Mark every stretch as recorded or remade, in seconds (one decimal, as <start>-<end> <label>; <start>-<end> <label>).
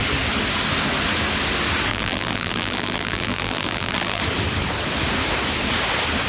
0.0-1.9 recorded; 1.9-4.2 remade; 4.2-6.3 recorded